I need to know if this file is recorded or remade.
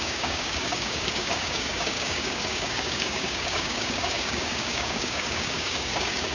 remade